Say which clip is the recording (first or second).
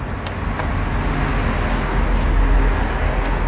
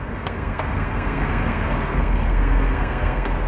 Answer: first